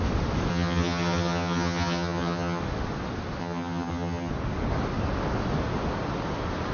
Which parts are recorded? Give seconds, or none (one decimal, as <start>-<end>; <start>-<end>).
0.0-0.5; 2.6-3.4; 4.3-6.7